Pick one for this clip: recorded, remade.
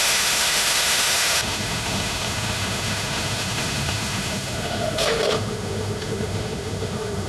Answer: remade